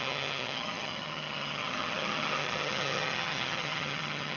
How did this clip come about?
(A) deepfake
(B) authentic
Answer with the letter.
A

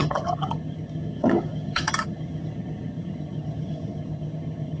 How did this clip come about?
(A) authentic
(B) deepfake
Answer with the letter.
B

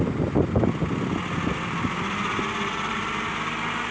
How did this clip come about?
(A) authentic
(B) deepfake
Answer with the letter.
A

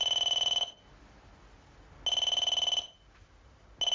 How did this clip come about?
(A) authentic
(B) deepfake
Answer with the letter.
A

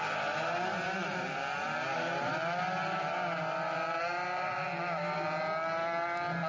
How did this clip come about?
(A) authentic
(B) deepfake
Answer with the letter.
A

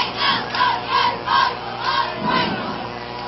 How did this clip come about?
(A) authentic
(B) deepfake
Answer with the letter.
A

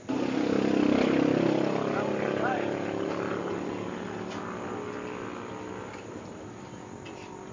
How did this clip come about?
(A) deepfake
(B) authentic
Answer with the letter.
B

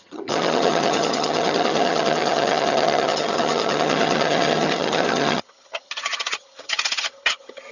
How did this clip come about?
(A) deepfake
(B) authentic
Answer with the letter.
A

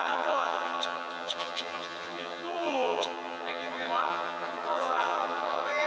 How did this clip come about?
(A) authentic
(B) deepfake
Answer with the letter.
B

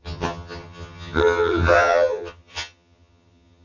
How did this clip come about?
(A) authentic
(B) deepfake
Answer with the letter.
B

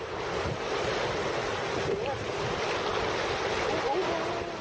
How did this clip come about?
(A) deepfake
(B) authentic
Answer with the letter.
B